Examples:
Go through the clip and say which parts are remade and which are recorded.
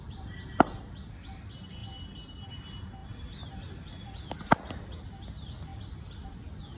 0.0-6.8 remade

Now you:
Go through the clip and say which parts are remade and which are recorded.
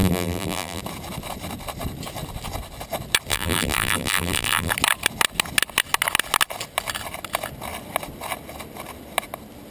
0.0-0.8 remade; 0.8-3.3 recorded; 3.3-4.7 remade; 4.7-9.7 recorded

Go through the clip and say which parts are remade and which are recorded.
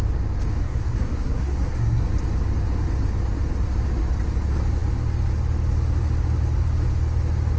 0.0-0.6 recorded; 0.6-2.0 remade; 2.0-7.6 recorded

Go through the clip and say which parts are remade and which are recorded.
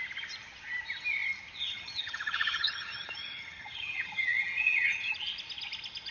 0.0-1.6 recorded; 1.6-5.1 remade; 5.1-6.1 recorded